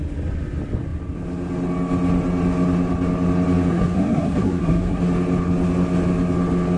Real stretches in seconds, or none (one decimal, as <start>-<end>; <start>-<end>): 0.0-3.7; 5.0-6.8